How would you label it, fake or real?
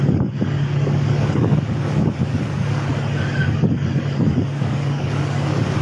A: fake